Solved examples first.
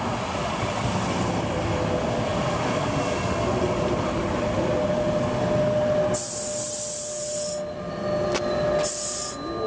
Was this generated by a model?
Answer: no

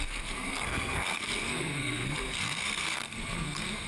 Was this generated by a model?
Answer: yes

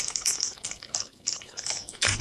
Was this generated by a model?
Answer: yes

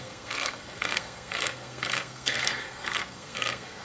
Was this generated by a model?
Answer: yes